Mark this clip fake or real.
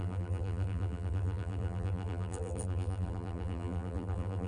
fake